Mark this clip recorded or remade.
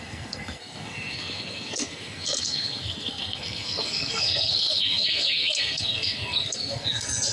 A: remade